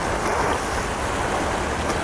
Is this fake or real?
real